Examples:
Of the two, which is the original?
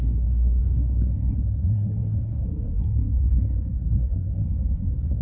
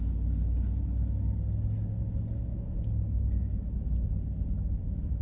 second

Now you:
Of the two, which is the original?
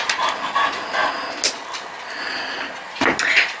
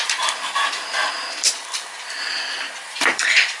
first